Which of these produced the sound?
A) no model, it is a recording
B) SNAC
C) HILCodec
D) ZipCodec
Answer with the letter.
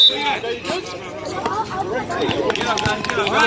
A